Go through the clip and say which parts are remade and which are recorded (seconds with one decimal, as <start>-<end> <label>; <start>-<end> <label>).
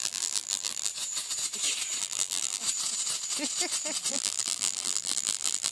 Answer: 0.0-0.9 remade; 0.9-2.0 recorded; 2.0-2.6 remade; 2.6-4.1 recorded; 4.1-5.7 remade